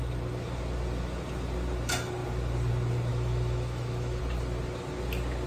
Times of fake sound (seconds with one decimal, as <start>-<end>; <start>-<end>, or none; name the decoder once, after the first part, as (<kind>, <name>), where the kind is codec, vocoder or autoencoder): 3.1-4.2 (autoencoder, DAC-VAE)